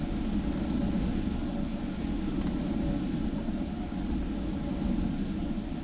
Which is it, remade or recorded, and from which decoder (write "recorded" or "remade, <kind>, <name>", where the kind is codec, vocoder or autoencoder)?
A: recorded